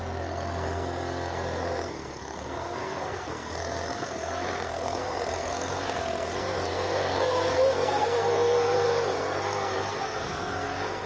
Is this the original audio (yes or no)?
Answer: no